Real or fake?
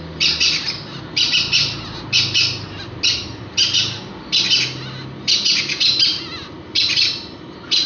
real